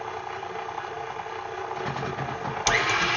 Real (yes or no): yes